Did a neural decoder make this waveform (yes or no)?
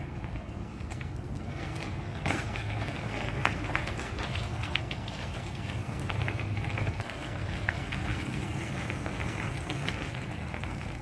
yes